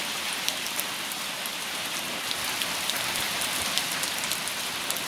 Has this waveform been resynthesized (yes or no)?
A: no